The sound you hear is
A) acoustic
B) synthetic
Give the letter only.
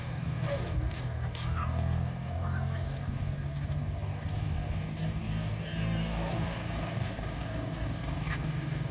B